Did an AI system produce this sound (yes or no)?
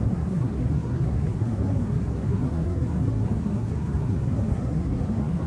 yes